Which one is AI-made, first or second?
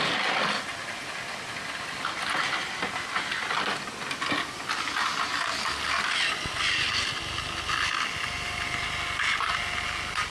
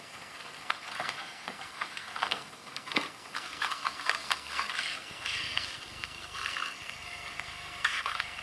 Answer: second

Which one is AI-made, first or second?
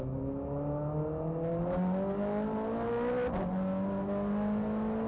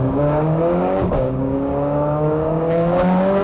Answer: second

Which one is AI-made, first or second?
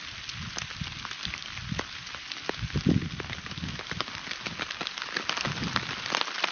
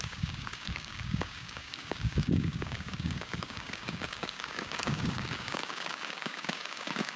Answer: second